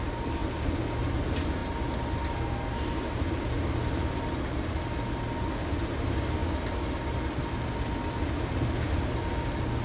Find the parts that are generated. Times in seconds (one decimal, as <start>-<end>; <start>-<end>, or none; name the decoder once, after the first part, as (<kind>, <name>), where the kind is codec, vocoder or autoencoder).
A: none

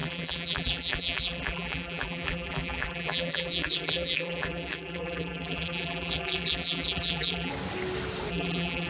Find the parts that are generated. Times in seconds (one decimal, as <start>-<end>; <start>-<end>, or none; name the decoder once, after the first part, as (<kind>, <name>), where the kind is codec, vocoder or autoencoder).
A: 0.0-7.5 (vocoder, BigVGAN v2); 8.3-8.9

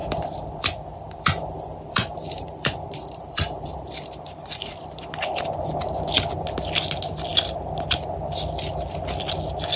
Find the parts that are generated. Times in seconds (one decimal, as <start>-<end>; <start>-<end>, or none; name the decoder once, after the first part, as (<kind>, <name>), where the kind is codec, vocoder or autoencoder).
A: 0.0-4.9 (vocoder, BigVGAN v2)

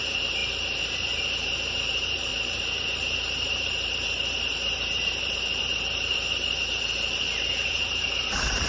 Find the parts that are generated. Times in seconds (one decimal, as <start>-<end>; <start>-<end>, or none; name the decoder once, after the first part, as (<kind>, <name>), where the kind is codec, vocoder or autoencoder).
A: 0.0-8.7 (vocoder, BigVGAN v2)